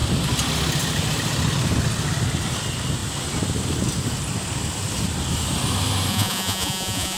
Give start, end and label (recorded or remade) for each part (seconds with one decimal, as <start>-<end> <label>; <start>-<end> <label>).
0.0-6.1 recorded; 6.1-7.2 remade